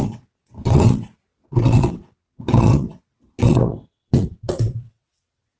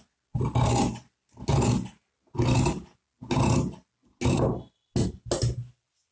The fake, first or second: first